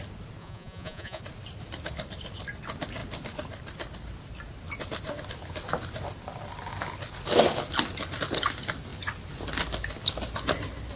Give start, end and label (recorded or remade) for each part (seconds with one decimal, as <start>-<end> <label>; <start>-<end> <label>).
0.0-0.4 recorded; 0.4-1.2 remade; 1.2-11.0 recorded